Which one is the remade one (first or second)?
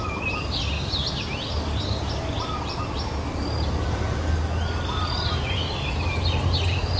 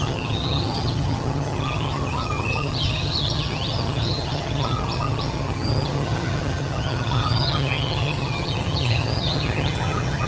second